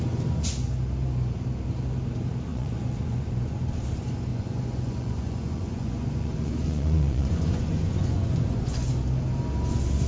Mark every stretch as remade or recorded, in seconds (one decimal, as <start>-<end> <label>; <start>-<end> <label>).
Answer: 0.0-2.5 recorded; 2.5-3.6 remade; 3.6-4.3 recorded; 4.3-8.9 remade; 8.9-10.1 recorded